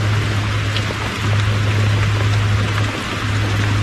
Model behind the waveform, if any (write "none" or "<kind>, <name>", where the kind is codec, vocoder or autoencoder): none